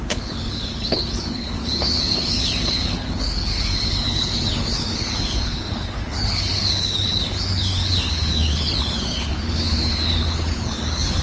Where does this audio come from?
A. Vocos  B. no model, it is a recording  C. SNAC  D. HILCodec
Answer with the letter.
D